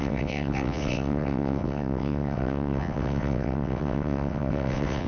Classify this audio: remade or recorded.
remade